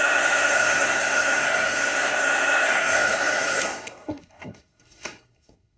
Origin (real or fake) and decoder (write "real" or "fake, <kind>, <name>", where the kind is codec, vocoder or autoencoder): fake, codec, SNAC